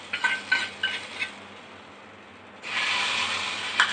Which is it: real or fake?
real